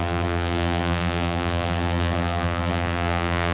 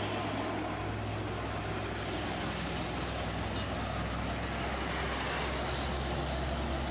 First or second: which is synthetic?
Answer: first